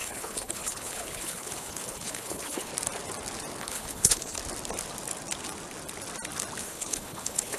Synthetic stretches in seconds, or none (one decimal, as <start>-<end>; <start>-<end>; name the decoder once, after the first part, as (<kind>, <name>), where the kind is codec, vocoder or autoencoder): 0.0-2.7 (codec, HILCodec); 3.6-4.4; 6.6-7.6